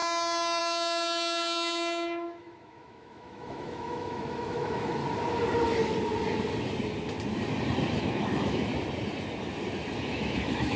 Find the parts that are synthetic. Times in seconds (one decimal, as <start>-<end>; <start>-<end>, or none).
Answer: 0.6-5.0; 8.0-8.7; 10.0-10.8